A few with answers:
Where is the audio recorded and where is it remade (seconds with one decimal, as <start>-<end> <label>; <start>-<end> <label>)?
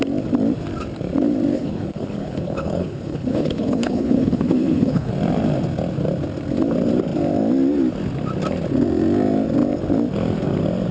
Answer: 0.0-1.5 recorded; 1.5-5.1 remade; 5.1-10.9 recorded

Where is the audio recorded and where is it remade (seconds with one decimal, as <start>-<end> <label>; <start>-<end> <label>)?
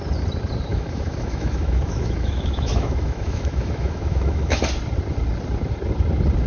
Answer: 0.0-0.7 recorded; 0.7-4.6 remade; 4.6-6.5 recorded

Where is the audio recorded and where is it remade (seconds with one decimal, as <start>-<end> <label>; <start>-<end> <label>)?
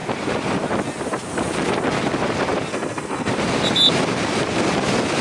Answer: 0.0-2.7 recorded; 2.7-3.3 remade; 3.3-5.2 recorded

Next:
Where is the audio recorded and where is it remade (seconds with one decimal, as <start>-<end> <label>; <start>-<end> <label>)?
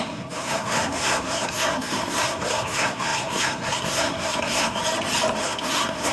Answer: 0.0-4.8 remade; 4.8-5.4 recorded; 5.4-6.1 remade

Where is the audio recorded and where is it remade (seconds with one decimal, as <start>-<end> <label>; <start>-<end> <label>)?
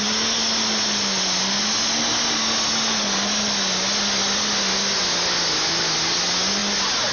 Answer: 0.0-7.1 recorded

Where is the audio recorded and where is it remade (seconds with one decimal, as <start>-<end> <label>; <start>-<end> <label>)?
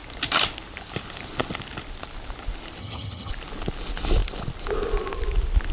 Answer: 0.0-2.8 recorded; 2.8-3.3 remade; 3.3-5.7 recorded